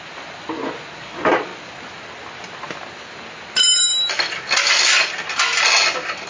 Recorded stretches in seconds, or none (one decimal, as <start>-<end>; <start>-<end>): 0.0-6.3